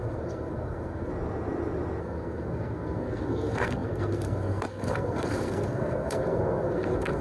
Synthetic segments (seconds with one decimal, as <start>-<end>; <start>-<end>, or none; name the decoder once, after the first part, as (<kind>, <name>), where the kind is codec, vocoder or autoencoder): 0.0-1.1 (codec, SNAC); 2.0-7.2